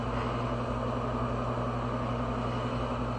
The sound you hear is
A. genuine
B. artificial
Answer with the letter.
A